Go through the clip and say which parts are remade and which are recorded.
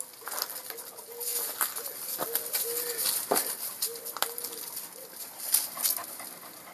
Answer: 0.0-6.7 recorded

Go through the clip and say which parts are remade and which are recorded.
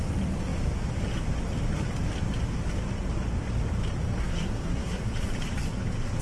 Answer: 0.0-4.2 recorded; 4.2-5.1 remade; 5.1-6.2 recorded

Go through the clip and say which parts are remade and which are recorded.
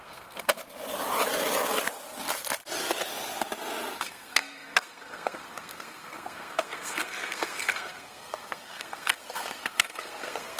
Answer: 0.0-0.6 remade; 0.6-4.0 recorded; 4.0-10.6 remade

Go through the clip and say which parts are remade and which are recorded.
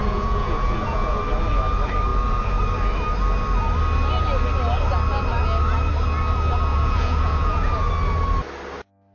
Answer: 0.0-1.2 remade; 1.2-6.7 recorded; 6.7-7.9 remade; 7.9-9.1 recorded